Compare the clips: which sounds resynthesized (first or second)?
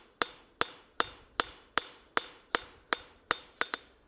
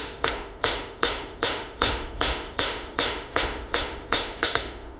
second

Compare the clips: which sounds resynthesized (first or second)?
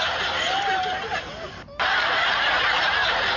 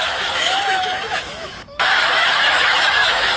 second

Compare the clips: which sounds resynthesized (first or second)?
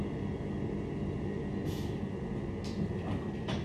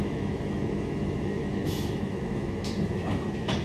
second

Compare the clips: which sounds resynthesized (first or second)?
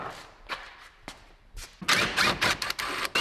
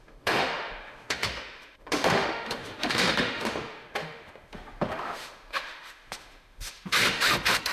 second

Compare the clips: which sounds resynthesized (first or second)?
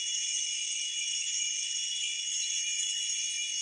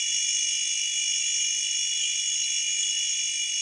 first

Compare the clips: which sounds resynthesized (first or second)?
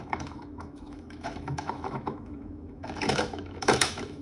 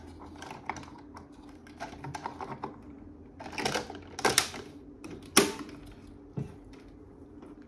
first